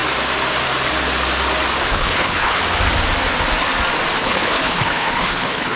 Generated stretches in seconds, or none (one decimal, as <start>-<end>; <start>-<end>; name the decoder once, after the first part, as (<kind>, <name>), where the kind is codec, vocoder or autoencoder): 1.9-2.6 (codec, HILCodec); 4.2-5.8